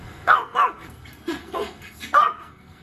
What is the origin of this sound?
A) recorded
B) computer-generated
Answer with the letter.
B